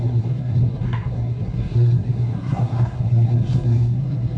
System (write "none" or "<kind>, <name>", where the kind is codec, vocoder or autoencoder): codec, SNAC